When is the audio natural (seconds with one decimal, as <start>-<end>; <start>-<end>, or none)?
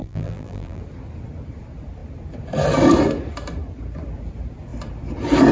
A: 0.8-5.5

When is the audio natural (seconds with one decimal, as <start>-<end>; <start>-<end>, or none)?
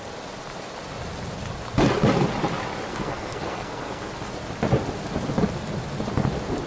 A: 0.0-2.9; 4.1-6.7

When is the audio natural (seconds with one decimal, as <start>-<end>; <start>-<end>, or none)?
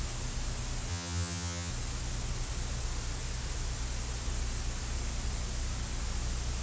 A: 0.0-0.9; 1.7-6.6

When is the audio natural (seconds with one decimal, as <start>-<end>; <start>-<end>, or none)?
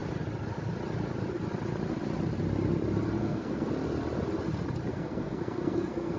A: 0.0-3.2; 3.7-4.9